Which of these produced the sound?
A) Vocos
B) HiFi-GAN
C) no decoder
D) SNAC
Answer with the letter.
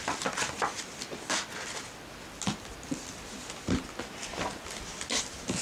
C